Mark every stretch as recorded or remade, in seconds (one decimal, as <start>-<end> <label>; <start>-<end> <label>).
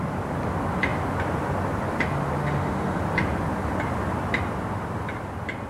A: 0.0-2.4 recorded; 2.4-3.0 remade; 3.0-5.7 recorded